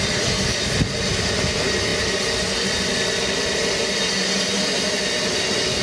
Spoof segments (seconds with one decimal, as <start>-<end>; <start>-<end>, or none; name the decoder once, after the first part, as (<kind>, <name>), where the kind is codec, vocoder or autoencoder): none